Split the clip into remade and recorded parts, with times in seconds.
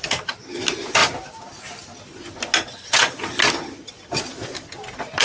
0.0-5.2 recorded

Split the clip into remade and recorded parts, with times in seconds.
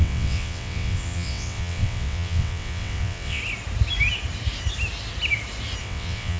0.0-3.4 remade; 3.4-5.8 recorded; 5.8-6.4 remade